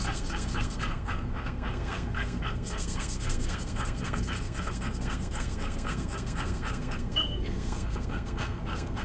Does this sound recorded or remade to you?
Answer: remade